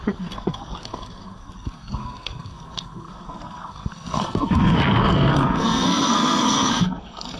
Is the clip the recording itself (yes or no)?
no